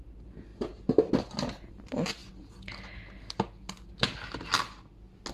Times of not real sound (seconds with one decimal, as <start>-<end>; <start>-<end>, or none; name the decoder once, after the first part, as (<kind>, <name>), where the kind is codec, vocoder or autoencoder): none